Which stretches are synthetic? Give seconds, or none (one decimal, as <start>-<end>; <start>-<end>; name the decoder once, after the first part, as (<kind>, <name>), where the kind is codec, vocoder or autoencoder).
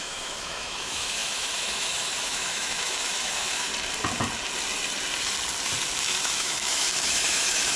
0.0-3.7 (autoencoder, DAC-VAE); 6.0-7.8